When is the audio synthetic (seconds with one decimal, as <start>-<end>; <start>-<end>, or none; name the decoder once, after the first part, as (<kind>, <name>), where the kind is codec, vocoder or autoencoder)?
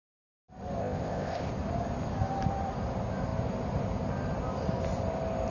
0.8-1.5 (codec, ZipCodec)